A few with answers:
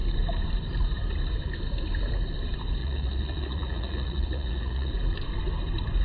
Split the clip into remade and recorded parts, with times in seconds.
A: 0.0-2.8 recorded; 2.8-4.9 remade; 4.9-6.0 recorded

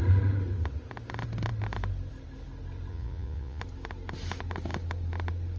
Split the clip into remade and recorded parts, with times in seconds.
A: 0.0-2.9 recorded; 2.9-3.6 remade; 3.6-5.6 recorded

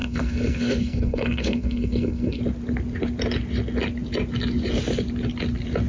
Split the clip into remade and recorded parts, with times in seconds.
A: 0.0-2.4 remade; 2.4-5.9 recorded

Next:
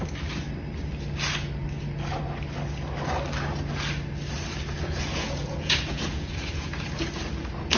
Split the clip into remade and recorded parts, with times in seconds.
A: 0.0-4.7 recorded; 4.7-7.1 remade; 7.1-7.8 recorded

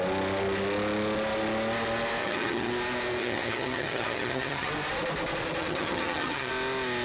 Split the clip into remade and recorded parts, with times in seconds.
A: 0.0-2.2 recorded; 2.2-2.7 remade; 2.7-3.2 recorded; 3.2-4.7 remade; 4.7-5.6 recorded; 5.6-6.5 remade; 6.5-7.0 recorded

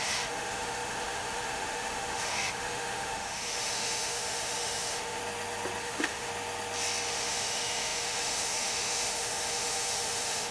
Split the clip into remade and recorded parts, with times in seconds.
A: 0.0-5.2 remade; 5.2-5.8 recorded; 5.8-6.3 remade; 6.3-7.1 recorded; 7.1-10.5 remade

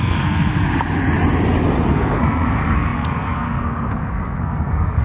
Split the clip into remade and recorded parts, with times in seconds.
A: 0.0-0.6 remade; 0.6-1.9 recorded; 1.9-5.0 remade